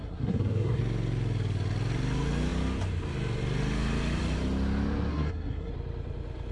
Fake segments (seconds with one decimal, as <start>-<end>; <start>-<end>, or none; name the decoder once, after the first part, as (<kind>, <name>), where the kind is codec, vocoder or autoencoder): 0.0-0.8 (codec, SNAC); 5.1-5.7